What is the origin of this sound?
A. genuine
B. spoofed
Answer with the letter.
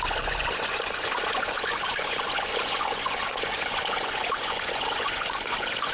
B